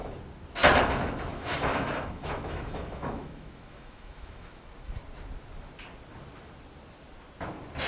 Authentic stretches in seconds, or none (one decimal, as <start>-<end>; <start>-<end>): 0.0-1.3; 4.6-7.9